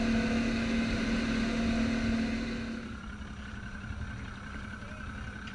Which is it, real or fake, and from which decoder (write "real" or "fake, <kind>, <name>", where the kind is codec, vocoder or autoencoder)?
real